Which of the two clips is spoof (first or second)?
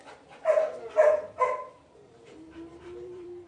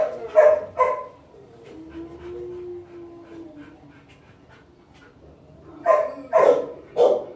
first